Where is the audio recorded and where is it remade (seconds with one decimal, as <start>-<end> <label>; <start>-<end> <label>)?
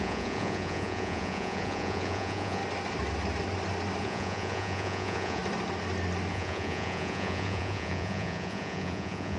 0.0-2.6 remade; 2.6-4.0 recorded; 4.0-5.4 remade; 5.4-6.3 recorded; 6.3-9.4 remade